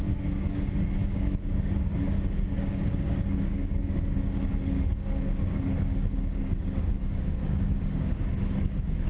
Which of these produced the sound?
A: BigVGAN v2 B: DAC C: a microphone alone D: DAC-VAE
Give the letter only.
B